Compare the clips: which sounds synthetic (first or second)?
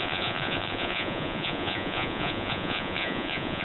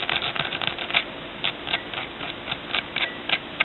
first